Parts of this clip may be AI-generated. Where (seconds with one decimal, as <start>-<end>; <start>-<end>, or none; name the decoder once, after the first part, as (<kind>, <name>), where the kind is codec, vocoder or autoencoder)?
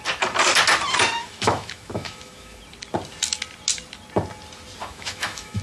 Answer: 1.2-2.6 (autoencoder, DAC-VAE); 4.8-5.6